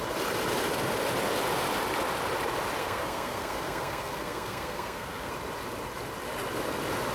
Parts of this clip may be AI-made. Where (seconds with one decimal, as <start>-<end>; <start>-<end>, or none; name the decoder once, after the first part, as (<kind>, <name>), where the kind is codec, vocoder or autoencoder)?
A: 2.8-5.3 (codec, SNAC)